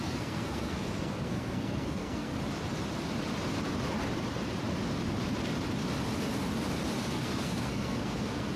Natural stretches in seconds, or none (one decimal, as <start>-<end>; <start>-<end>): 2.3-7.0